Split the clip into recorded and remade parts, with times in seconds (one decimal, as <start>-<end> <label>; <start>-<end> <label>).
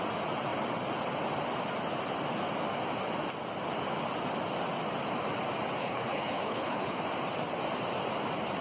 0.0-5.8 recorded; 5.8-7.0 remade; 7.0-8.6 recorded